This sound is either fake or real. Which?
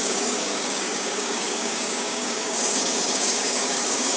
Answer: fake